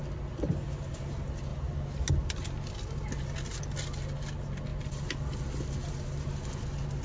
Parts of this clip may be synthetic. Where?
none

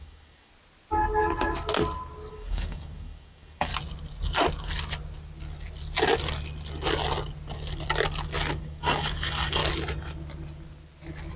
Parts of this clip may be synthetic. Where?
0.0-0.5 (codec, DAC); 2.3-3.7; 8.6-9.6